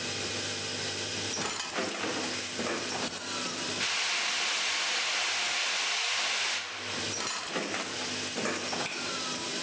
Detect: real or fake real